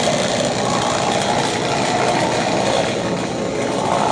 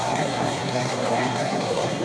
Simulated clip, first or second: second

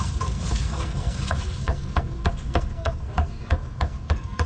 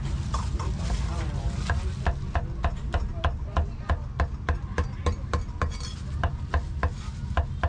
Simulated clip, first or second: first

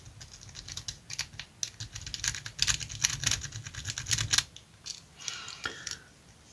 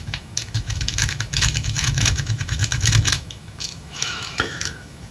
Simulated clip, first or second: second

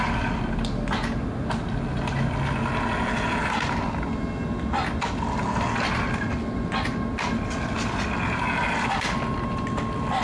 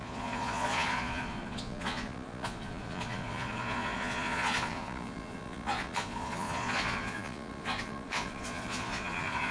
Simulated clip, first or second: second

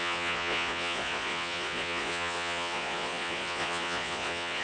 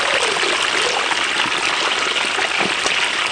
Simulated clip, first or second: first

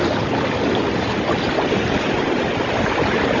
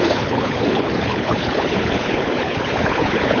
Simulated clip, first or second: second